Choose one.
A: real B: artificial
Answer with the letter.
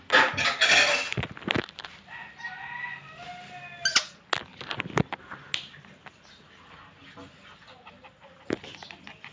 A